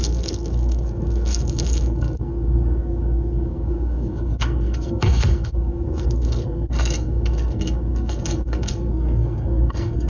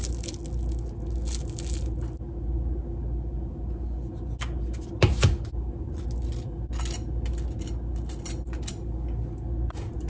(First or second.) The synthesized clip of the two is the first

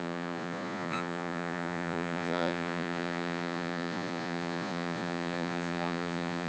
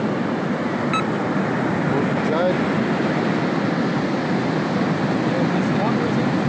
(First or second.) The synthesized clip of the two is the first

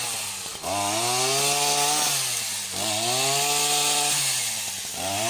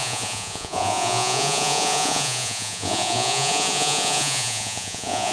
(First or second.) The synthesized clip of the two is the second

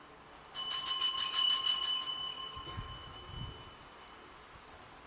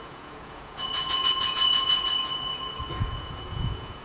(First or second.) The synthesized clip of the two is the second